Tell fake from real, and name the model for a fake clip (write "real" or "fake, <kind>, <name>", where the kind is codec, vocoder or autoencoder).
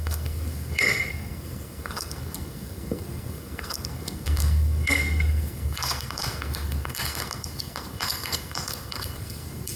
fake, codec, SNAC